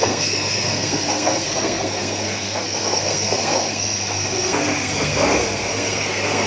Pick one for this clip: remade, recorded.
remade